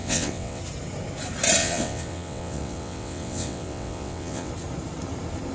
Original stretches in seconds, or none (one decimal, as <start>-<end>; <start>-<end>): 0.6-1.6; 4.5-5.5